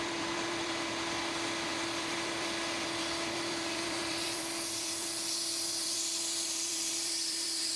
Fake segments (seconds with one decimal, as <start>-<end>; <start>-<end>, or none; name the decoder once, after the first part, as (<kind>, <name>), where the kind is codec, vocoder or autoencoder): 0.0-7.8 (vocoder, BigVGAN v2)